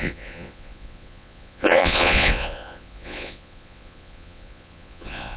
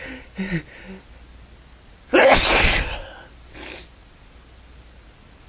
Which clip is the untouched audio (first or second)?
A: second